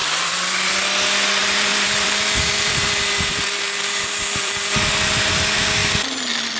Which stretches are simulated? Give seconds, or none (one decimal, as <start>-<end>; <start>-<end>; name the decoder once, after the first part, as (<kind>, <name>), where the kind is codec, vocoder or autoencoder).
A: 0.0-0.7 (vocoder, BigVGAN v2); 1.4-4.9; 5.8-6.6